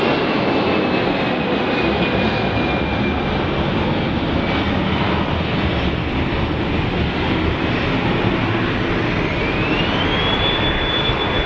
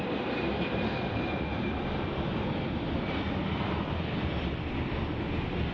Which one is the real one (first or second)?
first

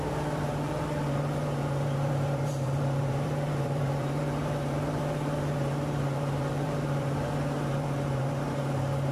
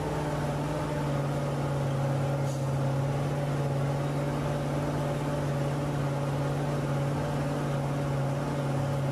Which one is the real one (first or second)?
second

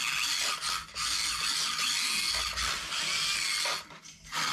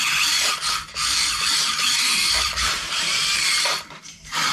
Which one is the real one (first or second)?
first